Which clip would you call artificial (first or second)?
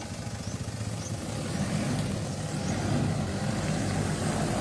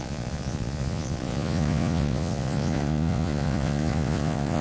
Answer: second